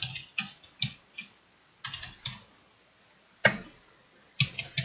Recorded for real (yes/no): yes